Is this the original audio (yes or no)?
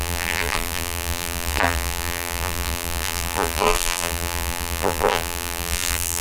no